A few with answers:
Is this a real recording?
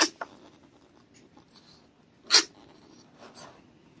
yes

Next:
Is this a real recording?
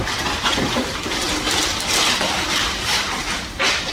yes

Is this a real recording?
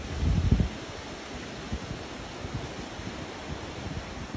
yes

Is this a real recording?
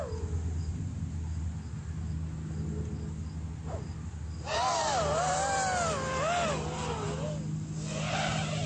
yes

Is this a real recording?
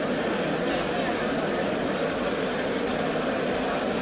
yes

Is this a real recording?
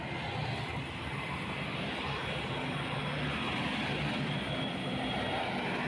yes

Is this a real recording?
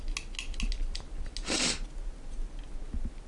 yes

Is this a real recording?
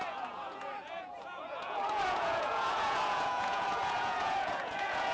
no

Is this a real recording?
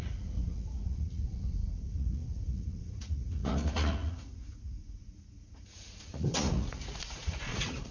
no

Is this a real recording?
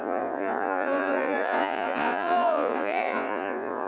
no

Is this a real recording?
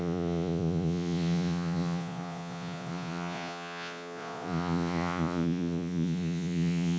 no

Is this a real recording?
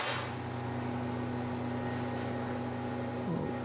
yes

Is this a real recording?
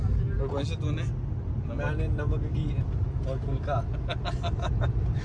yes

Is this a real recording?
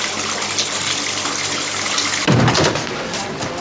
yes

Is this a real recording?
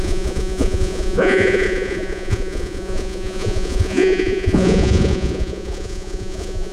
no